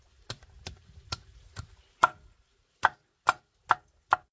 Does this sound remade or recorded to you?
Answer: recorded